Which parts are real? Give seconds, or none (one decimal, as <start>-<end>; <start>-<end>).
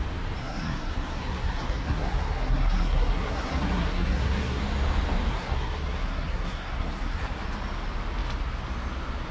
0.0-0.4; 4.6-5.3; 7.4-9.3